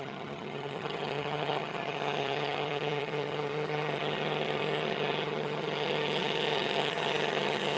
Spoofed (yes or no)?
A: yes